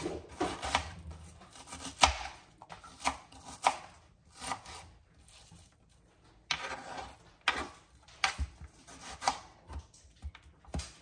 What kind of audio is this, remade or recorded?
recorded